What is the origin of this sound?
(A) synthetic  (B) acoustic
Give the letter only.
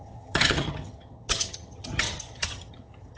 A